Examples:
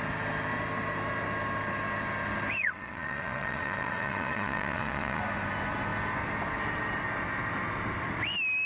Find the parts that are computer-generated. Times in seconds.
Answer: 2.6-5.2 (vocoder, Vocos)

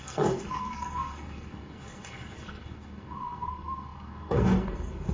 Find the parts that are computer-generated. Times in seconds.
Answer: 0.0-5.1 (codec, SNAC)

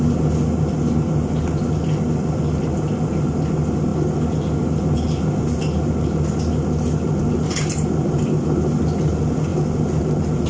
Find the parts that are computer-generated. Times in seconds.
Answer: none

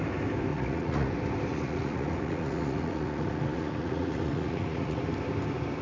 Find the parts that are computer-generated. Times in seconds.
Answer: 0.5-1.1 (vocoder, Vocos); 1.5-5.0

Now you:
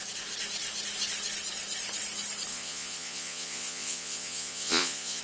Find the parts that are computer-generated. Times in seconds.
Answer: 2.5-5.2 (vocoder, Vocos)

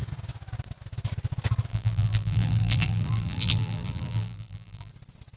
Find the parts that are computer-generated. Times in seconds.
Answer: 1.7-4.9 (vocoder, BigVGAN v2)

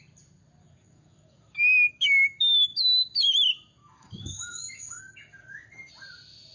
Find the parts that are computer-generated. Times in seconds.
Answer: 0.6-2.8 (codec, DAC); 3.8-5.9

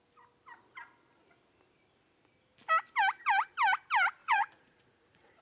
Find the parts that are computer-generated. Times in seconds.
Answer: 4.2-5.4 (vocoder, Vocos)